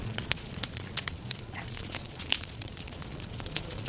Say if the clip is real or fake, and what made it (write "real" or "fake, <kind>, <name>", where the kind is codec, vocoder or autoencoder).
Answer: fake, vocoder, Vocos